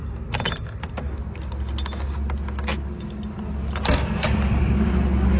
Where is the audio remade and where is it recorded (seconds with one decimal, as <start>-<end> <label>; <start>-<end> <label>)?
0.0-5.4 recorded